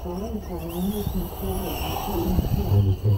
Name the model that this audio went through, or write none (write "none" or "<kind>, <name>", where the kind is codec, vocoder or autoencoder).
vocoder, BigVGAN v2